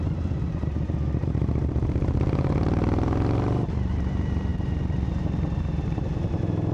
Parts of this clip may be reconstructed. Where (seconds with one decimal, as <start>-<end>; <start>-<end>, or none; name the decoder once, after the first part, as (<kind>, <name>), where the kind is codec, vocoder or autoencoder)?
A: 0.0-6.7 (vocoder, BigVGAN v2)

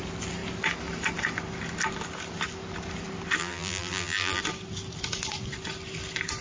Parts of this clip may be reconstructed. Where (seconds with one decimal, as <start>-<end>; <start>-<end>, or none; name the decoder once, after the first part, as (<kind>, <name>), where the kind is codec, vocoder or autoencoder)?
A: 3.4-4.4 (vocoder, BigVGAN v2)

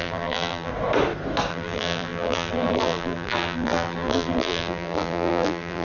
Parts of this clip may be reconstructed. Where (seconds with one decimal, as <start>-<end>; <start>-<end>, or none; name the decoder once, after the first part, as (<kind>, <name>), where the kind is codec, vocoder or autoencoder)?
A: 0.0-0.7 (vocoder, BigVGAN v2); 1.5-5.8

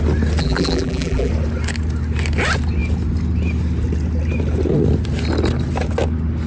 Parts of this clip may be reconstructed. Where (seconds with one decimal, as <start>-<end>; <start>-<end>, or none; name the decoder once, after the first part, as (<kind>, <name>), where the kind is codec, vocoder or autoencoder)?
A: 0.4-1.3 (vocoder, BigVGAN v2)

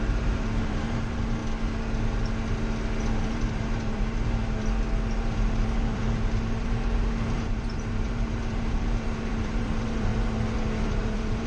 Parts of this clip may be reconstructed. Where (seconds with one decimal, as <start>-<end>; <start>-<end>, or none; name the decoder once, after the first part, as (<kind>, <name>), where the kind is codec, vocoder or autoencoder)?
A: 0.0-1.4 (vocoder, BigVGAN v2); 3.1-4.4; 5.1-10.1; 10.8-11.5

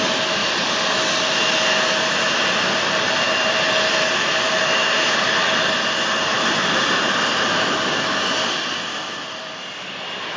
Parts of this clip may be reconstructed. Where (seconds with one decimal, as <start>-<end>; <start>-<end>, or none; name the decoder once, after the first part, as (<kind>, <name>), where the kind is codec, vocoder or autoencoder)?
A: none